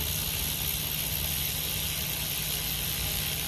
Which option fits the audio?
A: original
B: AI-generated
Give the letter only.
A